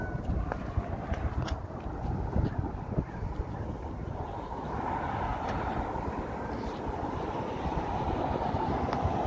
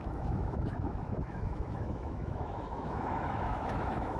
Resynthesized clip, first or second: second